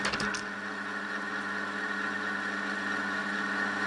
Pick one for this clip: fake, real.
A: real